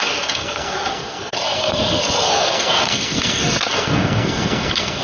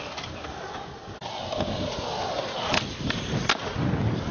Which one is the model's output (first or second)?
first